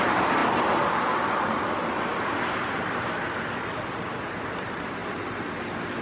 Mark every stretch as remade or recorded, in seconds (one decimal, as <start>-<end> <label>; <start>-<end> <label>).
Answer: 0.0-0.4 recorded; 0.4-4.0 remade; 4.0-5.0 recorded; 5.0-6.0 remade